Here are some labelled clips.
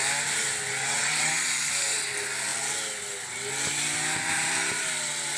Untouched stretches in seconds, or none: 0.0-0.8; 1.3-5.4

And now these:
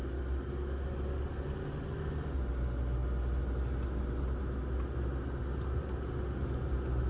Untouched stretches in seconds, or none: 0.0-7.1

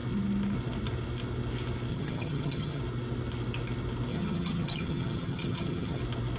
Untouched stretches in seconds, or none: 0.0-1.9; 2.8-4.1; 6.0-6.4

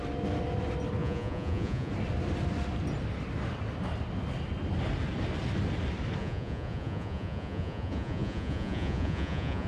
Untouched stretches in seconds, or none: 0.0-1.0; 1.9-6.2

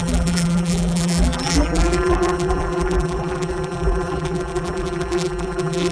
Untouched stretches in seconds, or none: none